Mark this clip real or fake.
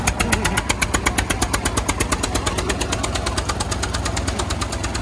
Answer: real